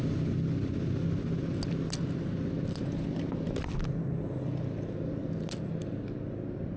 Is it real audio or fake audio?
real